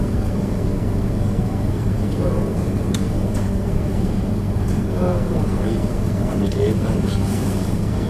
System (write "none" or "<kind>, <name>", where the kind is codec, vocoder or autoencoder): codec, SNAC